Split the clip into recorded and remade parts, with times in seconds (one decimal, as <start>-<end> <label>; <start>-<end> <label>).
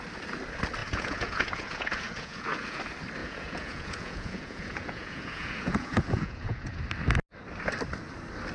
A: 0.0-0.8 recorded; 0.8-2.8 remade; 2.8-3.2 recorded; 3.2-6.8 remade; 6.8-8.5 recorded